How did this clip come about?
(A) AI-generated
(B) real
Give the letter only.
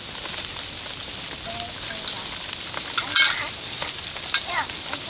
B